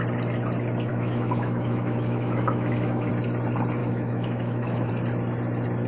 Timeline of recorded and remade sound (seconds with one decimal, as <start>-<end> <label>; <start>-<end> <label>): 0.0-0.9 recorded; 0.9-3.1 remade; 3.1-3.8 recorded; 3.8-4.9 remade; 4.9-5.9 recorded